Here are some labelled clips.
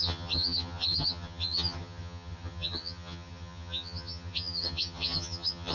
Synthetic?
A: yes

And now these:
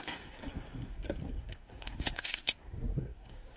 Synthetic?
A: yes